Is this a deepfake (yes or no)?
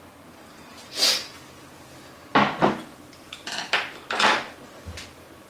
no